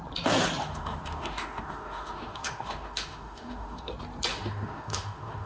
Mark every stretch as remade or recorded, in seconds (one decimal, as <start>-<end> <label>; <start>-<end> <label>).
0.0-0.6 recorded; 0.6-3.9 remade; 3.9-4.3 recorded; 4.3-5.5 remade